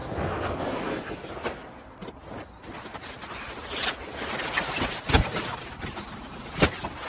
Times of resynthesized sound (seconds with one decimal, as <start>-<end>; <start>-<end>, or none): none